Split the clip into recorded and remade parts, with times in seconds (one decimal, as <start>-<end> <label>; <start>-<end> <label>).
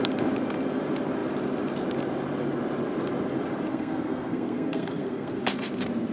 0.0-3.7 recorded; 3.7-5.4 remade; 5.4-6.1 recorded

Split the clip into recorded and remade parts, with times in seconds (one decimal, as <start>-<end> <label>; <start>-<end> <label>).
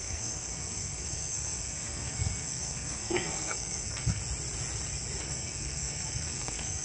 0.0-4.2 remade; 4.2-5.2 recorded; 5.2-6.8 remade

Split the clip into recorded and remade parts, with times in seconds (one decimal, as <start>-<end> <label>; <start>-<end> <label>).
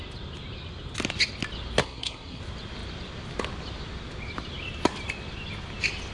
0.0-1.8 recorded; 1.8-2.4 remade; 2.4-6.1 recorded